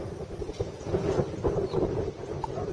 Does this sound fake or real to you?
fake